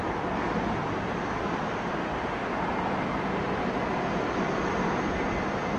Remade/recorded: recorded